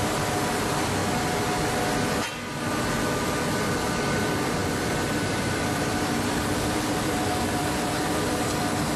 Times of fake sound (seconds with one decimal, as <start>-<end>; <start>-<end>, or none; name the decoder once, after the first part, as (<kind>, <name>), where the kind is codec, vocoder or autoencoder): 0.0-1.0 (vocoder, BigVGAN v2); 2.9-9.0